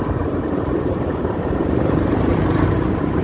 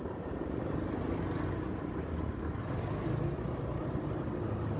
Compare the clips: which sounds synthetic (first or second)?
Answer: first